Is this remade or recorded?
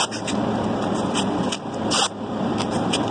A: recorded